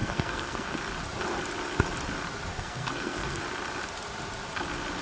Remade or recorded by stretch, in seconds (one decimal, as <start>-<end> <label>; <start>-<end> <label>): 0.0-0.8 remade; 0.8-2.5 recorded; 2.5-3.4 remade; 3.4-5.0 recorded